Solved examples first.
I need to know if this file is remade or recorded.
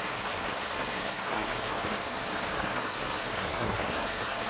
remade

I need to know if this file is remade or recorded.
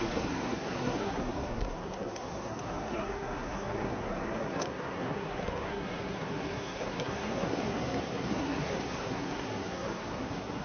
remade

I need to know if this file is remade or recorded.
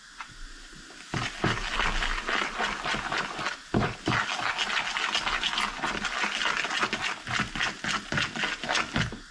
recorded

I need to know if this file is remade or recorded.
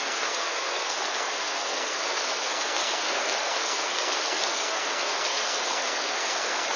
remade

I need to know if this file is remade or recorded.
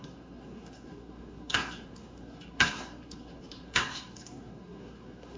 remade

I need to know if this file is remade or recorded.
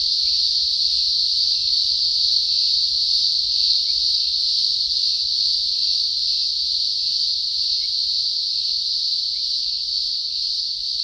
recorded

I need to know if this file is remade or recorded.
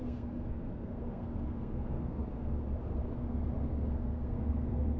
remade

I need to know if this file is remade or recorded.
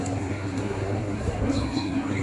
remade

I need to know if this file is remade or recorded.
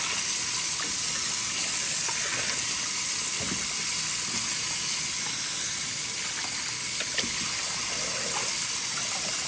recorded